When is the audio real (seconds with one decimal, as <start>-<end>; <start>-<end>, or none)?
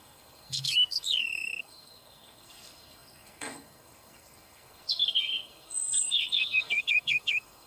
none